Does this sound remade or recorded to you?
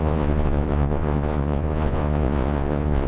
remade